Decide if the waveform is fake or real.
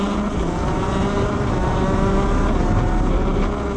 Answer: real